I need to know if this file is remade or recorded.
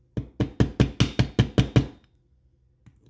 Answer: recorded